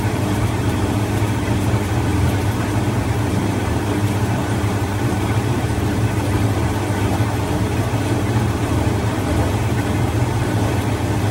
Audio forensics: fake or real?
fake